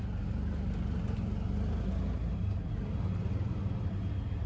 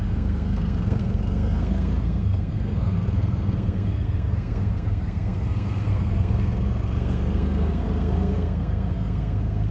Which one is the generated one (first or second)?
second